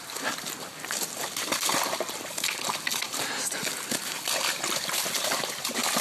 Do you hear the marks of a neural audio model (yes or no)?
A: no